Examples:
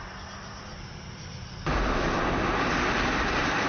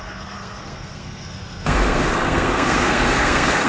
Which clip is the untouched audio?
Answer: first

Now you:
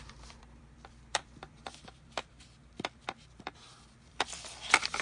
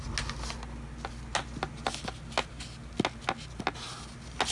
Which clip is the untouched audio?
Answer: second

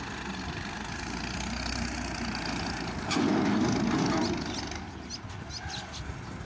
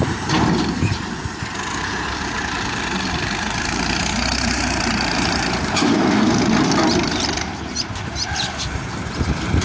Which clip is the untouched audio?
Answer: first